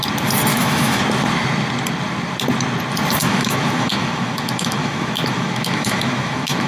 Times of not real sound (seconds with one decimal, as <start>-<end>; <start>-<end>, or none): 0.5-1.0; 3.2-6.7